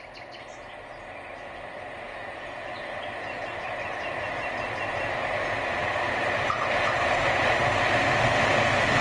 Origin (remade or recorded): recorded